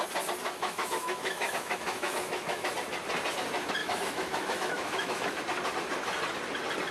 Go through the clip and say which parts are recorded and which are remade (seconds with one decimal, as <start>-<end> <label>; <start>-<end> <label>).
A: 0.0-0.4 recorded; 0.4-2.7 remade; 2.7-3.8 recorded; 3.8-5.4 remade; 5.4-6.9 recorded